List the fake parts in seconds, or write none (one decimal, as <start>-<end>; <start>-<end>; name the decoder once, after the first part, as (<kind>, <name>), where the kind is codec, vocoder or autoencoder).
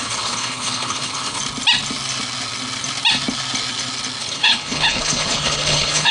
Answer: 0.0-1.4 (codec, HILCodec); 4.2-6.1